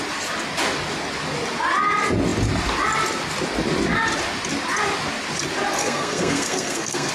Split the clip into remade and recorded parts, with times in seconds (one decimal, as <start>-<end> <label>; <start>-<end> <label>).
0.0-5.8 recorded; 5.8-7.1 remade

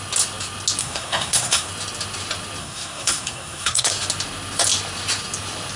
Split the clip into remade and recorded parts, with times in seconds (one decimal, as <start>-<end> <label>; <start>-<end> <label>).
0.0-0.8 recorded; 0.8-1.7 remade; 1.7-2.6 recorded; 2.6-3.9 remade; 3.9-5.8 recorded